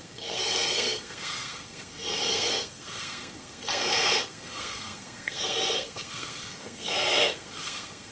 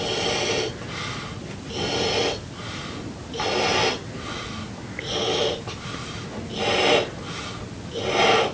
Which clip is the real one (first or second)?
second